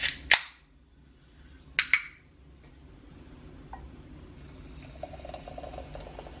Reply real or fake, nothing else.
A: real